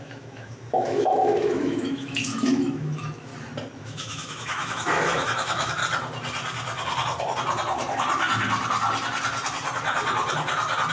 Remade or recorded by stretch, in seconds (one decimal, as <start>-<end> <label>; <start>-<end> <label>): 0.0-3.3 remade; 3.3-3.8 recorded; 3.8-5.8 remade; 5.8-10.9 recorded